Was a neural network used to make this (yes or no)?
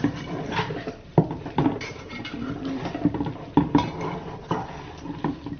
no